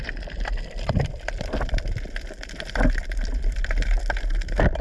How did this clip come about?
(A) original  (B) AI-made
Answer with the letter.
B